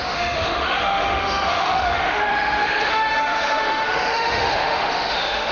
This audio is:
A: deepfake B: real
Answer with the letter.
A